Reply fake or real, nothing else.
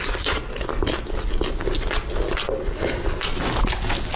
real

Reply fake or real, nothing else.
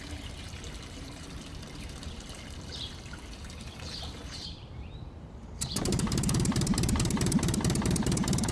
fake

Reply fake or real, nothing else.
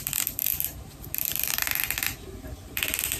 fake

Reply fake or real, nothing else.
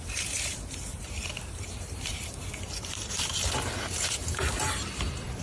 fake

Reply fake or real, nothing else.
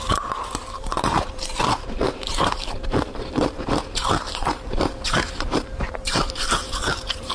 fake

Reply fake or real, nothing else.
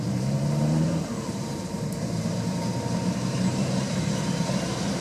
fake